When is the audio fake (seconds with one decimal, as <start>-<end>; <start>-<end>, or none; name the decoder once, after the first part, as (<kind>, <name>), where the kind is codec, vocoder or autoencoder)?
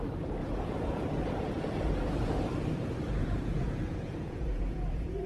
0.4-2.4 (vocoder, Vocos); 3.2-5.3